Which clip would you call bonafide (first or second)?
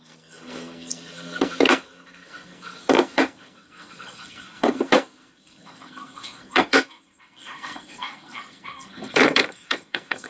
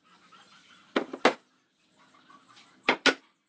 second